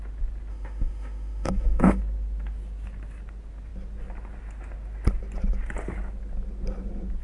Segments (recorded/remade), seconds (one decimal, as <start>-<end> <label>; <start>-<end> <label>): 0.0-0.5 recorded; 0.5-2.0 remade; 2.0-7.2 recorded